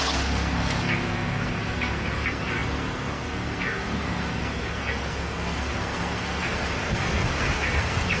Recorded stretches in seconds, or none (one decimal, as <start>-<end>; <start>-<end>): none